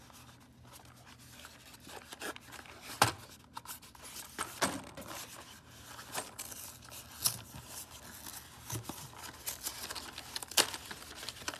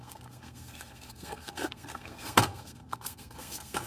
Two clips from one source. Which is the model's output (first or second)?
second